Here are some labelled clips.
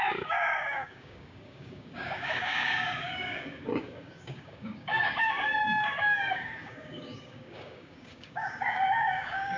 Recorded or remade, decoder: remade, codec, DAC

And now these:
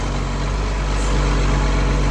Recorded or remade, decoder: recorded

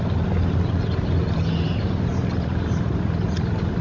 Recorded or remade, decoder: recorded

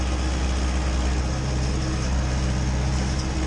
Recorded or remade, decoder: recorded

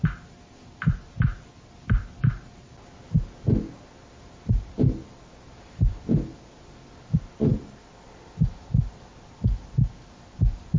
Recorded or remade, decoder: recorded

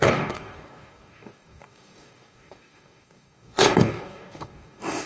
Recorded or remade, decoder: remade, codec, DAC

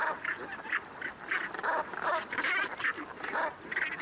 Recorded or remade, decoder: remade, vocoder, BigVGAN v2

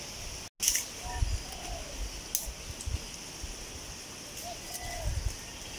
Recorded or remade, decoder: recorded